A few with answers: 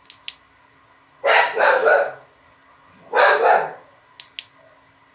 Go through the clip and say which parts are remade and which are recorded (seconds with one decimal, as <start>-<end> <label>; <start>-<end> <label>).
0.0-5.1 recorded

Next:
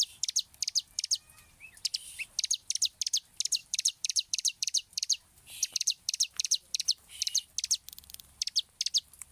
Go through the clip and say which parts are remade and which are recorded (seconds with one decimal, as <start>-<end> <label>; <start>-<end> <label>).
0.0-3.6 recorded; 3.6-7.5 remade; 7.5-9.3 recorded

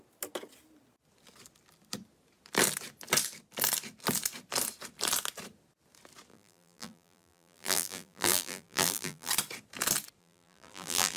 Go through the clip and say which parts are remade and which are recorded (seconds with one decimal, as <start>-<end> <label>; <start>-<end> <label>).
0.0-6.3 recorded; 6.3-9.3 remade; 9.3-10.2 recorded; 10.2-11.2 remade